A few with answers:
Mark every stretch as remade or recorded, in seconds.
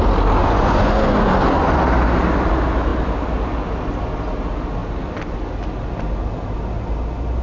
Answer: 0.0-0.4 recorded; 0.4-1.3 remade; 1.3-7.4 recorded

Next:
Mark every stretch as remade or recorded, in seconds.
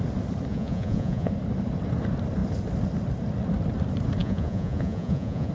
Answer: 0.0-0.5 recorded; 0.5-1.3 remade; 1.3-4.2 recorded; 4.2-5.5 remade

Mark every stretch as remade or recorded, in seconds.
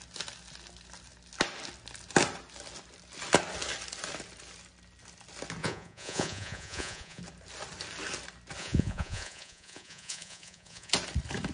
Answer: 0.0-5.6 recorded; 5.6-7.2 remade; 7.2-8.6 recorded; 8.6-10.9 remade; 10.9-11.5 recorded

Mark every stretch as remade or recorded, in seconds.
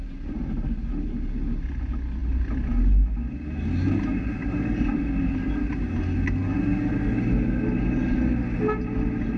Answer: 0.0-9.4 recorded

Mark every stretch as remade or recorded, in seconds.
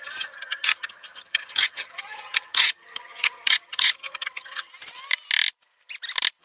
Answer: 0.0-4.7 remade; 4.7-6.4 recorded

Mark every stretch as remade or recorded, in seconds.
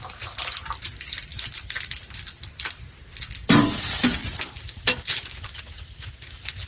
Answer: 0.0-1.3 recorded; 1.3-3.2 remade; 3.2-4.2 recorded; 4.2-5.6 remade; 5.6-6.7 recorded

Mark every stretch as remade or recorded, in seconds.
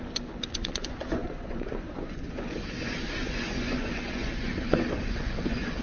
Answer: 0.0-5.8 remade